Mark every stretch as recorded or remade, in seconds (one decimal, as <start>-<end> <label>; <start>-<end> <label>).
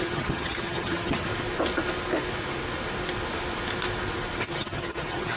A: 0.0-1.3 remade; 1.3-4.5 recorded; 4.5-5.4 remade